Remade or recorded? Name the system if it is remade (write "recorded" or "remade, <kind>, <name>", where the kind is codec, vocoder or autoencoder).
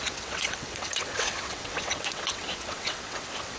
remade, vocoder, WaveNeXt